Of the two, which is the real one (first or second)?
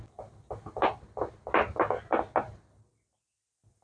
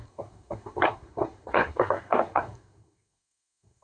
first